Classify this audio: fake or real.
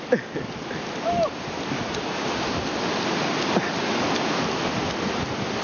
real